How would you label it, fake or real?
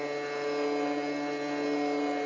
real